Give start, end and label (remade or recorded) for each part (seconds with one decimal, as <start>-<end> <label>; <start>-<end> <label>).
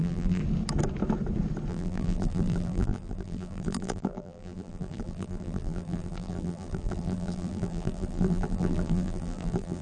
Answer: 0.0-0.4 remade; 0.4-1.7 recorded; 1.7-9.8 remade